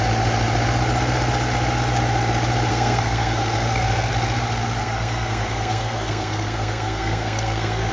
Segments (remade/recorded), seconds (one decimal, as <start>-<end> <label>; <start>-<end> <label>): 0.0-2.7 recorded; 2.7-4.1 remade; 4.1-4.8 recorded; 4.8-7.9 remade